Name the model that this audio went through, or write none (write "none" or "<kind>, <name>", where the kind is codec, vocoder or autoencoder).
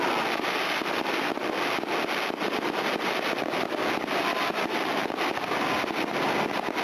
none